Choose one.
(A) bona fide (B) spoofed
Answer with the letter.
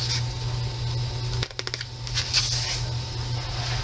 A